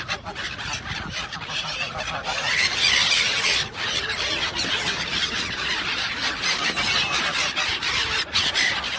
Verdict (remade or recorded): recorded